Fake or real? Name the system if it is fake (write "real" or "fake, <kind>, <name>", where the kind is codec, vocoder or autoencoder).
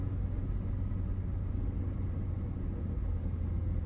real